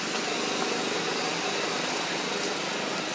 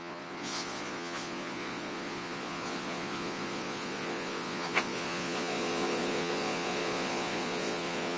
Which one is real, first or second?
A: first